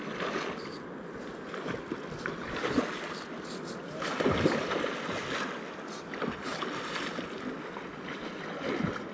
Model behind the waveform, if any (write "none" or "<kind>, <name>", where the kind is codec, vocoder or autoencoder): none